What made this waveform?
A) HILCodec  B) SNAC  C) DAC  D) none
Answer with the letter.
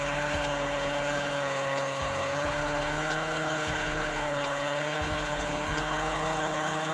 A